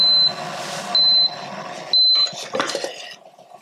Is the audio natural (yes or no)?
yes